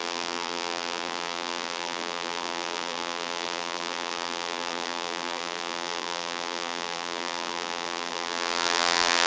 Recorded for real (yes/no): no